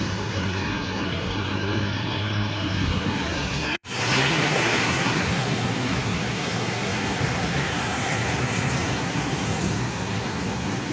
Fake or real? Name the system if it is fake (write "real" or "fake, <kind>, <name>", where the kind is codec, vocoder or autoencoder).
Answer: fake, codec, SNAC